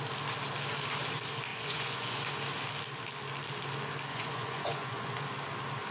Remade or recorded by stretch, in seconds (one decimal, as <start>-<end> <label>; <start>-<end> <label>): 0.0-1.5 recorded; 1.5-2.2 remade; 2.2-4.1 recorded; 4.1-5.1 remade; 5.1-5.9 recorded